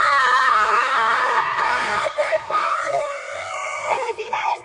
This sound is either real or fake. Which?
fake